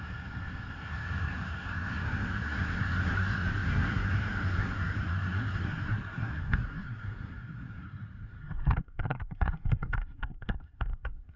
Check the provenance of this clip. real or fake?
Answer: fake